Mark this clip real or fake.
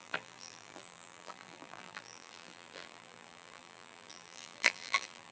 fake